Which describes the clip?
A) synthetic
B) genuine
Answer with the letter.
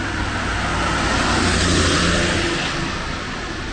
B